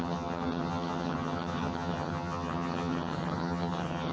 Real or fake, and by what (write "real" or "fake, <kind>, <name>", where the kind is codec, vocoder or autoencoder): fake, vocoder, HiFi-GAN